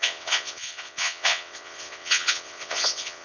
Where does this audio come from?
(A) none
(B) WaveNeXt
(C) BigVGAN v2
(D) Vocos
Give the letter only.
B